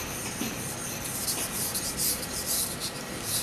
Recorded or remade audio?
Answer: remade